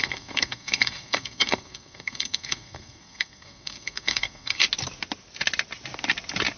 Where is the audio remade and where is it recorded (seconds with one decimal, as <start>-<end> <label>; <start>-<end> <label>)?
0.0-4.6 remade; 4.6-6.6 recorded